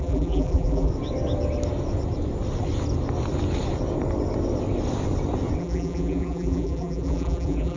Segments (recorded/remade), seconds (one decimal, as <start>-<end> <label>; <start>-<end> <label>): 0.0-0.9 remade; 0.9-5.6 recorded; 5.6-7.8 remade